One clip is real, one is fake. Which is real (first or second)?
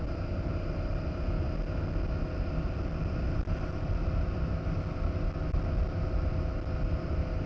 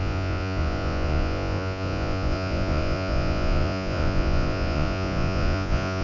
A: first